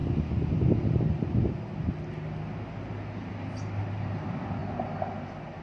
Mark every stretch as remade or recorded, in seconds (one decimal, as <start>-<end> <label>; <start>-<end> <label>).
0.0-5.6 recorded